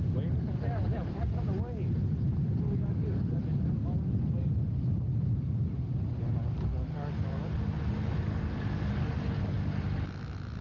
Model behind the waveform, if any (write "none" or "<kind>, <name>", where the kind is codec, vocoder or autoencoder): none